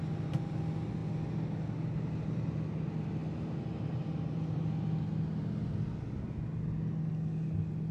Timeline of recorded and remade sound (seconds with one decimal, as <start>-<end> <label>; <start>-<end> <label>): 0.0-7.9 recorded